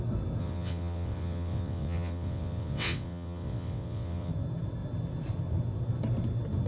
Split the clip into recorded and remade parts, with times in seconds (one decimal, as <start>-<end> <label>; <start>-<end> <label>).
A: 0.0-0.4 recorded; 0.4-4.3 remade; 4.3-6.7 recorded